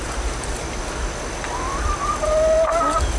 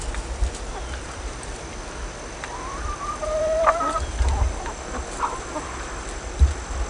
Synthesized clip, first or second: second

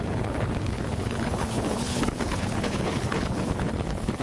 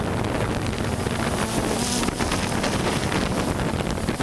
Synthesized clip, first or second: first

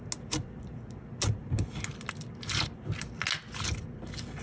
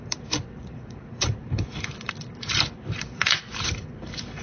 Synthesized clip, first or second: second